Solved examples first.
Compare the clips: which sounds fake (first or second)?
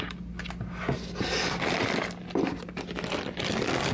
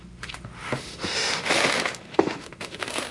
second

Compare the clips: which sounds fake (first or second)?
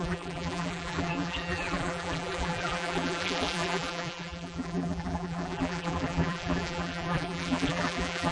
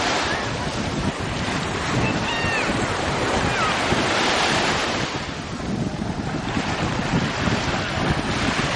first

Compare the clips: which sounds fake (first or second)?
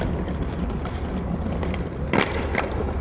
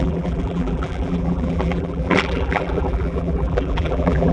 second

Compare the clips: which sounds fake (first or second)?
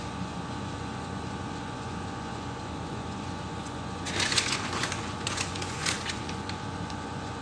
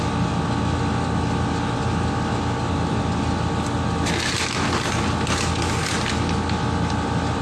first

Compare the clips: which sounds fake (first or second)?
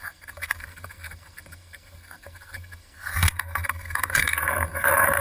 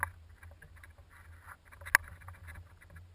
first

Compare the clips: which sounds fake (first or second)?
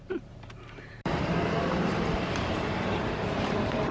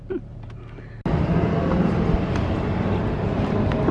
first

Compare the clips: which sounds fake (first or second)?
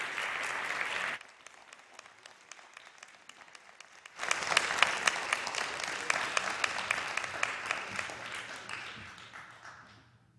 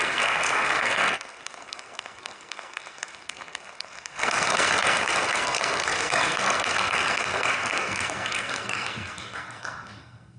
second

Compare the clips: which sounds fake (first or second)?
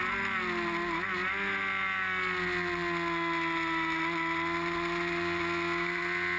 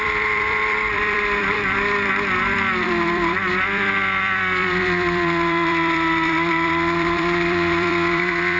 second